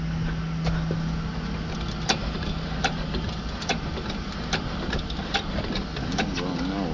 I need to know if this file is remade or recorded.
recorded